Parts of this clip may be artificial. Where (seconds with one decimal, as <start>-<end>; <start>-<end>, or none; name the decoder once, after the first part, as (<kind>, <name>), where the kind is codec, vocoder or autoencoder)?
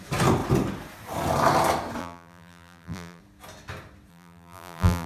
2.0-3.2 (vocoder, BigVGAN v2); 4.1-5.1